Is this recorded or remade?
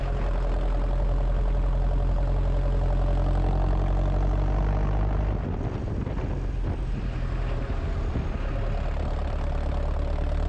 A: recorded